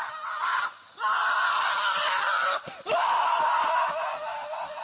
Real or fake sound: real